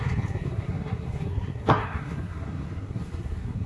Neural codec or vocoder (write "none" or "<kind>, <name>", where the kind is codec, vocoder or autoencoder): codec, SNAC